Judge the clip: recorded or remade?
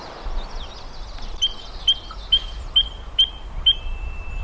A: recorded